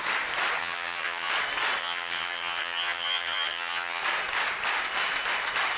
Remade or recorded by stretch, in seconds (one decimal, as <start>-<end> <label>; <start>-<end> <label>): 0.0-0.6 recorded; 0.6-1.3 remade; 1.3-1.8 recorded; 1.8-4.0 remade; 4.0-5.8 recorded

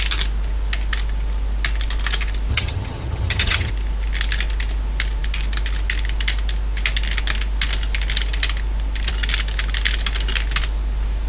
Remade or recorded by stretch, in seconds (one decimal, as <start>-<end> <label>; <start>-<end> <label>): 0.0-2.5 recorded; 2.5-3.7 remade; 3.7-11.3 recorded

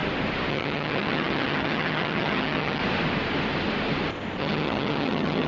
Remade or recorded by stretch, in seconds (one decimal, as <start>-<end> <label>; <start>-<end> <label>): 0.0-0.5 recorded; 0.5-2.8 remade; 2.8-4.4 recorded; 4.4-5.5 remade

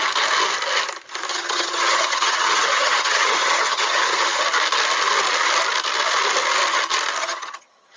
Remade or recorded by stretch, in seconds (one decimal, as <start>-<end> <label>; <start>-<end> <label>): 0.0-1.3 recorded; 1.3-4.4 remade; 4.4-7.2 recorded; 7.2-8.0 remade

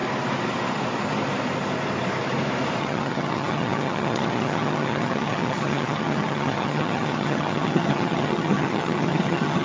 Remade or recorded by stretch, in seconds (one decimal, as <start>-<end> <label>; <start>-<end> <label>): 0.0-2.8 recorded; 2.8-9.6 remade

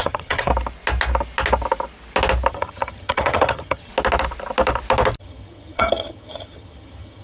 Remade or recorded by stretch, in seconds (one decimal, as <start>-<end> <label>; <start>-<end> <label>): 0.0-0.5 remade; 0.5-2.5 recorded; 2.5-3.9 remade; 3.9-5.2 recorded; 5.2-7.2 remade

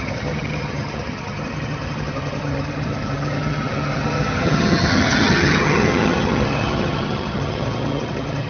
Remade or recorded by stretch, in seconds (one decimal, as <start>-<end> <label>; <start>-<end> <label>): 0.0-8.5 remade